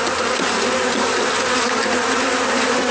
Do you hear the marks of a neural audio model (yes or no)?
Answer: no